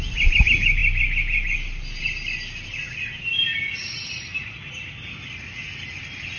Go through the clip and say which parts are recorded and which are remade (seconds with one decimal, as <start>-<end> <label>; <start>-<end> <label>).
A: 0.0-6.4 recorded